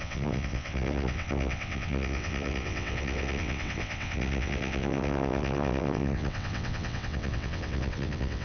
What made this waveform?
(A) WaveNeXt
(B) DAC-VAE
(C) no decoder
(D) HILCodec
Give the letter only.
A